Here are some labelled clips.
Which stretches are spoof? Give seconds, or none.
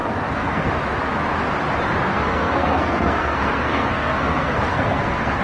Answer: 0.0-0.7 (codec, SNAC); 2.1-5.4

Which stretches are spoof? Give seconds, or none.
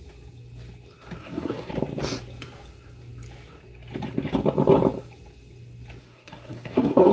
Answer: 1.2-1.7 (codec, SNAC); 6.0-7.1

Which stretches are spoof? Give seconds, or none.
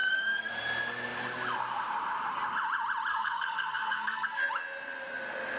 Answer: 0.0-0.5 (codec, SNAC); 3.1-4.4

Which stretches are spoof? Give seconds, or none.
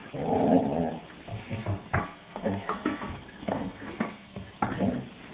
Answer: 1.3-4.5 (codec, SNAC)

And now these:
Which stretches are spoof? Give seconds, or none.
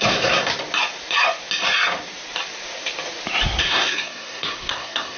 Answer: 0.0-0.5 (codec, SNAC); 3.6-5.2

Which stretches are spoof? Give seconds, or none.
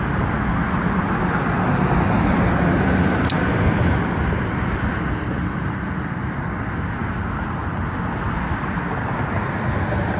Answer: none